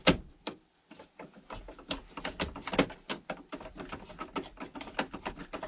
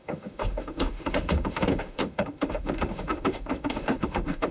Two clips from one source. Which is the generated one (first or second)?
second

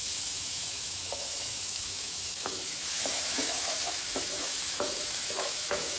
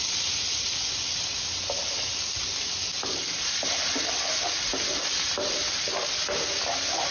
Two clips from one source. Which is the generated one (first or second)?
first